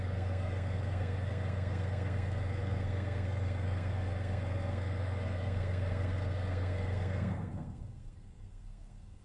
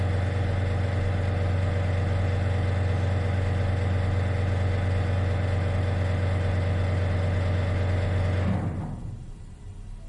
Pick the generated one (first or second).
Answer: first